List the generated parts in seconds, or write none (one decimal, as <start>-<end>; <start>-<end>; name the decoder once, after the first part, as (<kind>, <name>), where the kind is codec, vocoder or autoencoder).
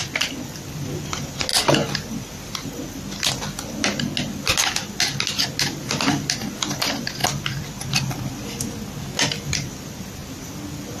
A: none